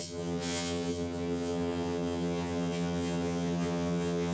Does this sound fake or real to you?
fake